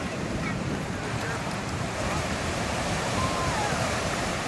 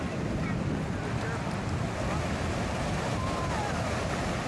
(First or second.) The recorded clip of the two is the second